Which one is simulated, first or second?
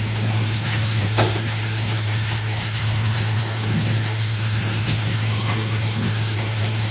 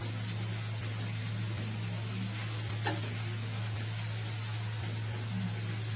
first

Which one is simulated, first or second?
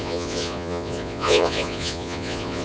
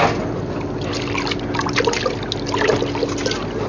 first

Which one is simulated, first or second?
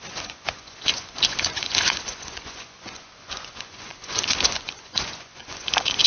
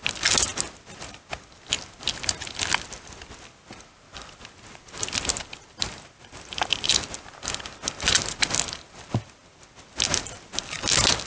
first